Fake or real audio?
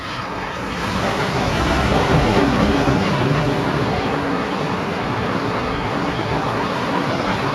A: fake